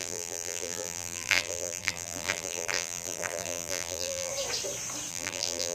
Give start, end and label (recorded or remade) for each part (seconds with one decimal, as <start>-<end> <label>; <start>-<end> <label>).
0.0-4.3 remade; 4.3-5.1 recorded; 5.1-5.7 remade